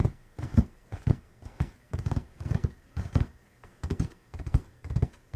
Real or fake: fake